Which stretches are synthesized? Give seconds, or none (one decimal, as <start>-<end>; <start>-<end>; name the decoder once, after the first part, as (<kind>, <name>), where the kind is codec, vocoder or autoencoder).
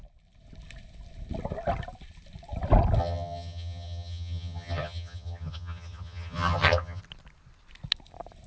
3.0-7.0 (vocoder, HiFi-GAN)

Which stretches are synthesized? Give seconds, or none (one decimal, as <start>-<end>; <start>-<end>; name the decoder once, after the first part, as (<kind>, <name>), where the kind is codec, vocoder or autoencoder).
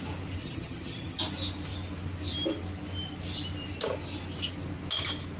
0.4-1.2 (vocoder, HiFi-GAN)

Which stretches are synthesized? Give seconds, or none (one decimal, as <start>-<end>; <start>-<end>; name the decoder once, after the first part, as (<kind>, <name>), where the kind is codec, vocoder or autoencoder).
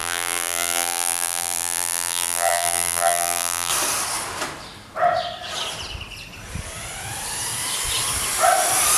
0.0-3.7 (vocoder, BigVGAN v2)